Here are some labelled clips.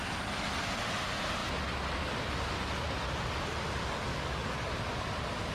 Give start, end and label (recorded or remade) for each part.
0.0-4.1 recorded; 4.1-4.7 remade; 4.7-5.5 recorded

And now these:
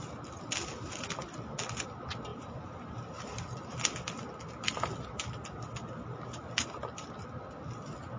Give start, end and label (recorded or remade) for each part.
0.0-8.2 recorded

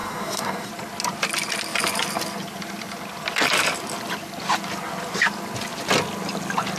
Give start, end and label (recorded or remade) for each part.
0.0-0.7 remade; 0.7-6.8 recorded

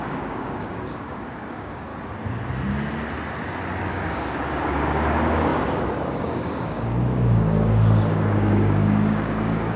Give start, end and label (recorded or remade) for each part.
0.0-1.9 remade; 1.9-3.9 recorded; 3.9-9.8 remade

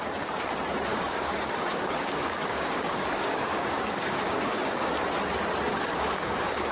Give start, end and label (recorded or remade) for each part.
0.0-0.9 recorded; 0.9-4.9 remade; 4.9-5.7 recorded; 5.7-6.7 remade

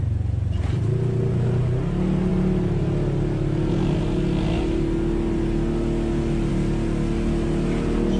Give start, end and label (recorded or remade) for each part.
0.0-8.2 recorded